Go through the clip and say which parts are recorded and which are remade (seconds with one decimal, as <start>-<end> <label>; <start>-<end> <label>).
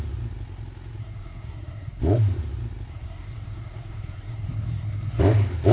0.0-1.0 recorded; 1.0-2.0 remade; 2.0-2.9 recorded; 2.9-5.2 remade; 5.2-5.7 recorded